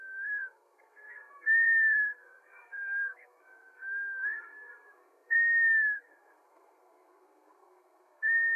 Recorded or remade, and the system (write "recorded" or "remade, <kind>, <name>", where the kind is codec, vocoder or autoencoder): remade, codec, SNAC